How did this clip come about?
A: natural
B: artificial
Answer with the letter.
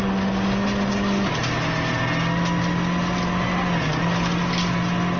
A